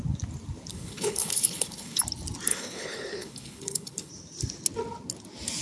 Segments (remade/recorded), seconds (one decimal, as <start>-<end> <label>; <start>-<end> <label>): 0.0-0.7 recorded; 0.7-2.0 remade; 2.0-2.5 recorded; 2.5-4.1 remade; 4.1-5.6 recorded